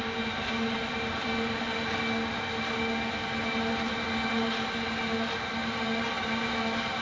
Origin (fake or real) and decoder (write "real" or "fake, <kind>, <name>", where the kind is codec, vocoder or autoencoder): real